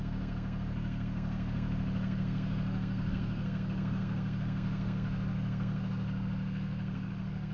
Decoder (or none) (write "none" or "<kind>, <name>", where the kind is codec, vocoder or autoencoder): codec, SNAC